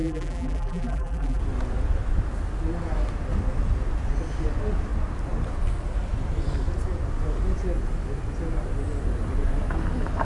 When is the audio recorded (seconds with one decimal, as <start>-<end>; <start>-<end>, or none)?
1.4-10.2